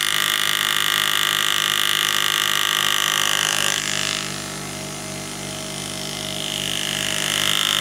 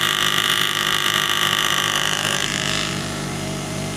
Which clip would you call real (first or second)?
first